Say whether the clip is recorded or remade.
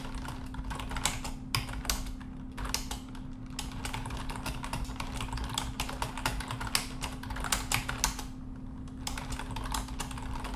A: recorded